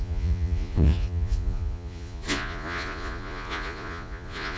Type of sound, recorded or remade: remade